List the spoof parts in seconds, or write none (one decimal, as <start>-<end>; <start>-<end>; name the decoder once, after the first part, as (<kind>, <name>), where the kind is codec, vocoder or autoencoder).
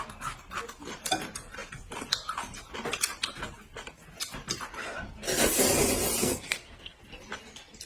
6.2-7.0 (codec, SNAC)